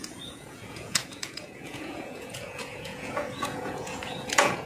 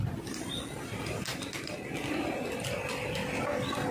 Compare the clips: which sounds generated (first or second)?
first